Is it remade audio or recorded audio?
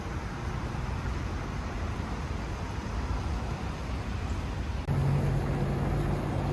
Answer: recorded